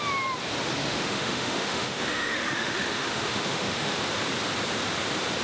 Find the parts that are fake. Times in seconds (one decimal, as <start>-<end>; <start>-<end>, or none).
0.8-4.0